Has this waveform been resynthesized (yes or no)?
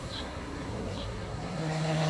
yes